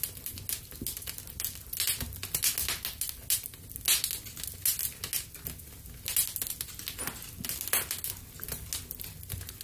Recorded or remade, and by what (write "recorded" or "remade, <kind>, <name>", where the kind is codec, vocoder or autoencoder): recorded